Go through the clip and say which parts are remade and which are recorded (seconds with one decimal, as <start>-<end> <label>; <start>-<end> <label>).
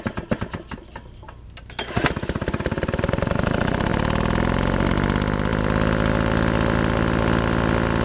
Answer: 0.0-8.0 recorded